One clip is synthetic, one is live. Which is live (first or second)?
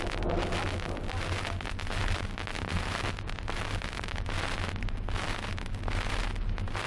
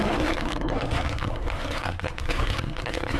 first